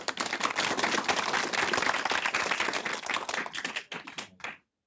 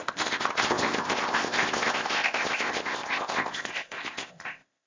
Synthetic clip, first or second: second